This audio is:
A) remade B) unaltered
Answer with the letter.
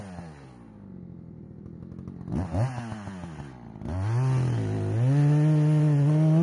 B